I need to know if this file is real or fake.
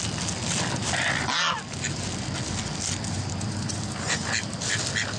real